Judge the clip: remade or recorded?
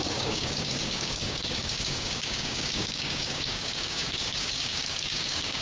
remade